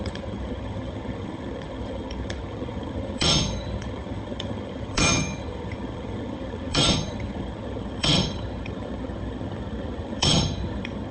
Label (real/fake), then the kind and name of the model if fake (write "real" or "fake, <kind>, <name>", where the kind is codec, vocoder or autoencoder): fake, vocoder, HiFi-GAN